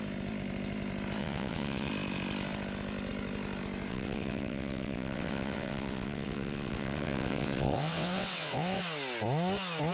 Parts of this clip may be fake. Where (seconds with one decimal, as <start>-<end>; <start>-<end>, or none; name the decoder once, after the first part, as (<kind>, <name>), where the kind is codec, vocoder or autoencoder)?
1.2-1.9 (vocoder, WaveNeXt); 3.9-8.8